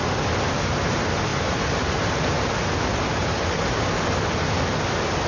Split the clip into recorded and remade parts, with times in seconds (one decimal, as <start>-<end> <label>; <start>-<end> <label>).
0.0-5.3 recorded